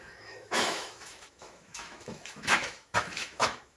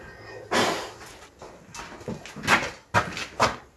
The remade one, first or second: first